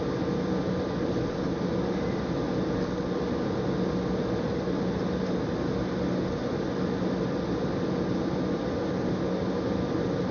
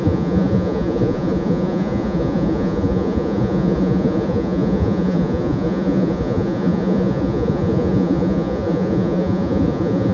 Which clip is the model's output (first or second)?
second